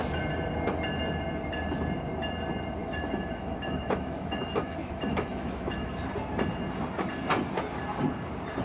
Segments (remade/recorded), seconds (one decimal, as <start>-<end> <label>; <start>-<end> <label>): 0.0-2.8 recorded; 2.8-5.9 remade; 5.9-8.6 recorded